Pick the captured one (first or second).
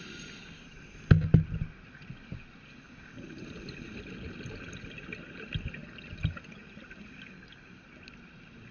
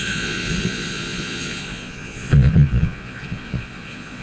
first